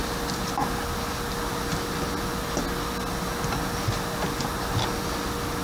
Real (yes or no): yes